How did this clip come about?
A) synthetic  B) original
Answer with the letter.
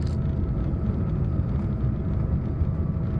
B